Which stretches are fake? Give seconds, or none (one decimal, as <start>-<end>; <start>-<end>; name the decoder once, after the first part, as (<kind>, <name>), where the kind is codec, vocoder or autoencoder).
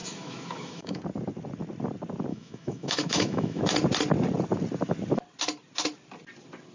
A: 0.0-1.0 (autoencoder, DAC-VAE); 2.3-3.6